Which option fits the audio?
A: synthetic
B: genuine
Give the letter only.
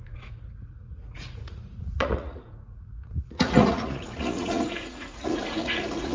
A